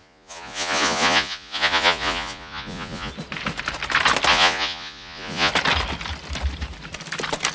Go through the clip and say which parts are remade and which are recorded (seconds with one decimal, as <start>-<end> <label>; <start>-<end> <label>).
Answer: 0.0-3.1 remade; 3.1-4.3 recorded; 4.3-5.5 remade; 5.5-7.5 recorded